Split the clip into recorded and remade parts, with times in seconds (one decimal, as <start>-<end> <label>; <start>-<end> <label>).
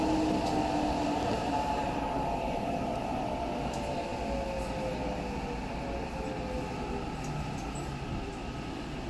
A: 0.0-9.1 recorded